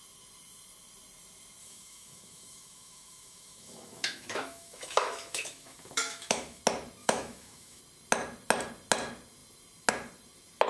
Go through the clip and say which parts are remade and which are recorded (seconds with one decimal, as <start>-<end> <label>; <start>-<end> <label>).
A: 0.0-1.6 recorded; 1.6-6.6 remade; 6.6-7.0 recorded; 7.0-7.8 remade; 7.8-10.7 recorded